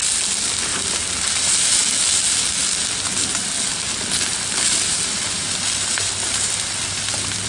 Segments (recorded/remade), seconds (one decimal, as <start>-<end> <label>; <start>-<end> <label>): 0.0-7.5 recorded